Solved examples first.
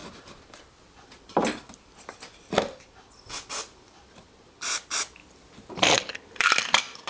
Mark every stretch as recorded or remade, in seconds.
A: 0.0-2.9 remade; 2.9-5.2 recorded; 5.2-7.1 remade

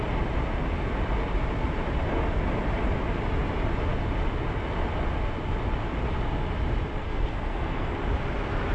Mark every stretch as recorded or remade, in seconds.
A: 0.0-7.0 recorded; 7.0-7.9 remade; 7.9-8.7 recorded

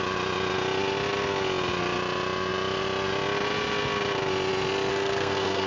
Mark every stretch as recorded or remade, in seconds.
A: 0.0-4.9 recorded; 4.9-5.7 remade

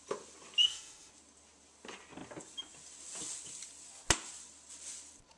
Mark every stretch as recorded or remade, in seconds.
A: 0.0-0.6 recorded; 0.6-1.1 remade; 1.1-5.4 recorded

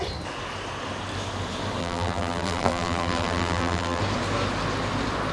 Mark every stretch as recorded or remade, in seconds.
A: 0.0-1.8 recorded; 1.8-4.0 remade; 4.0-5.3 recorded

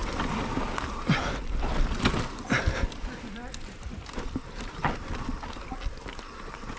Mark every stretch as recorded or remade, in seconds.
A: 0.0-6.8 recorded